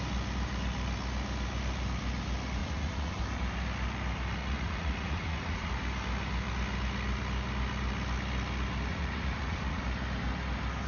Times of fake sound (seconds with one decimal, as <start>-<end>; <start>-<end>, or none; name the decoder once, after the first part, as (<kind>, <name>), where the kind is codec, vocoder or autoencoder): 2.6-3.2 (vocoder, Vocos); 4.4-5.7; 8.9-9.8